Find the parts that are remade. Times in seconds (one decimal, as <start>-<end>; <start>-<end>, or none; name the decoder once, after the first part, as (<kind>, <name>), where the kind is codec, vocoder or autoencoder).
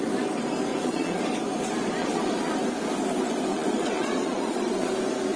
0.7-1.2 (vocoder, Vocos); 2.0-2.5; 3.5-4.9